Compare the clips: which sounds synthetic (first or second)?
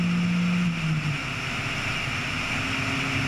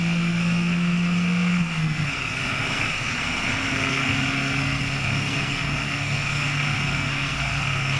second